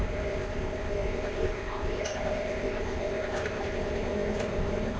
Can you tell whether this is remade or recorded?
remade